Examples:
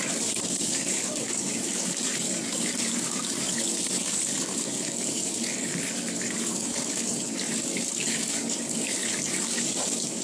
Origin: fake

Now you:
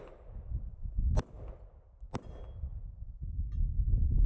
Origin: real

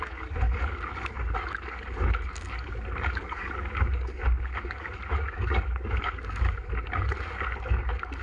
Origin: fake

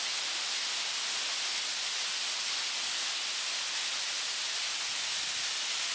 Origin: real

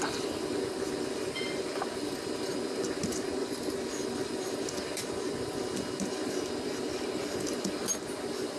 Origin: real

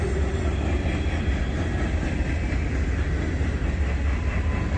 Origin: real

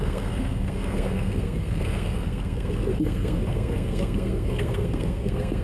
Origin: fake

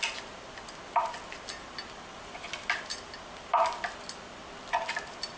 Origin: real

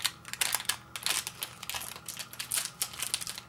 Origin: real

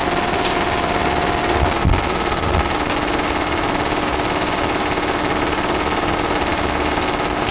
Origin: real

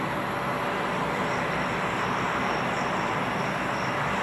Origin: real